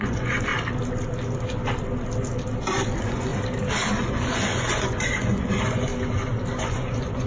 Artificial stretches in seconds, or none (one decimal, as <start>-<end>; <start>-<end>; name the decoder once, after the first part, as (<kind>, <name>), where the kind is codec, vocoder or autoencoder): 0.0-0.5 (vocoder, Vocos); 2.9-3.3; 4.0-5.9; 6.6-7.3